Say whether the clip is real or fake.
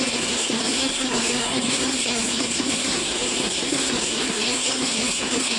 fake